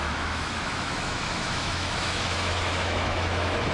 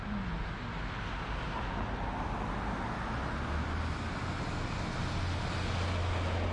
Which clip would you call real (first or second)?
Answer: second